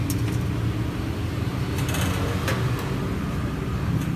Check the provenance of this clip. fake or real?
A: real